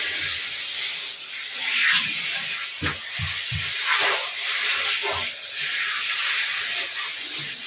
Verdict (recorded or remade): recorded